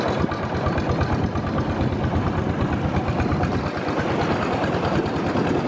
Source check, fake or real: real